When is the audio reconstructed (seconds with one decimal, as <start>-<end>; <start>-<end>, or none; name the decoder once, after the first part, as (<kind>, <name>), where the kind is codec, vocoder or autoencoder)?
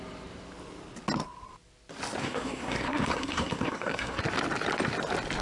2.2-4.2 (codec, SNAC)